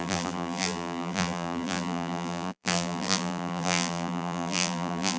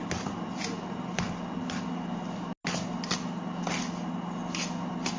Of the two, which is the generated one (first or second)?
first